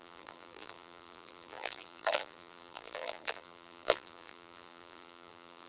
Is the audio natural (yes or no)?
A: no